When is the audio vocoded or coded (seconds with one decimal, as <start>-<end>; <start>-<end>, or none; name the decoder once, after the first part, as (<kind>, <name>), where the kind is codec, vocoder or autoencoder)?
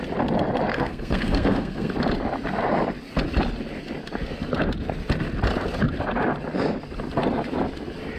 0.7-1.9 (codec, SNAC)